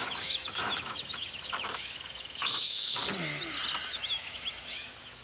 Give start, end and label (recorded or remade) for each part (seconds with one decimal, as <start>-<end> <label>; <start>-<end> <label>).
0.0-3.0 remade; 3.0-3.9 recorded; 3.9-5.2 remade